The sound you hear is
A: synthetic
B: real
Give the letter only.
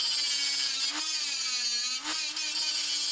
B